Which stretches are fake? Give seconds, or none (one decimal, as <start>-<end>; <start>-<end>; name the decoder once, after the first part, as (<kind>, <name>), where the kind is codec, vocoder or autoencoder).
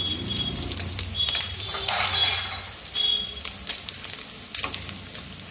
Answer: 0.0-2.2 (vocoder, BigVGAN v2)